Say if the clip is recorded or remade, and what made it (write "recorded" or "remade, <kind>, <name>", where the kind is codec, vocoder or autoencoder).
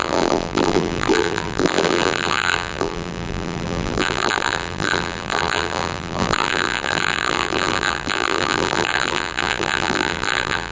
remade, vocoder, BigVGAN v2